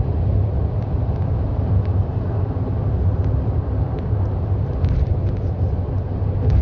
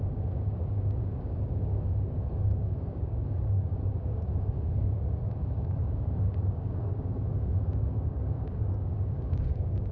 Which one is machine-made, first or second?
second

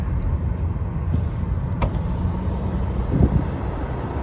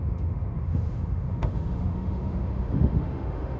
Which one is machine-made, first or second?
second